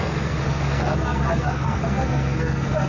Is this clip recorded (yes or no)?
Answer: no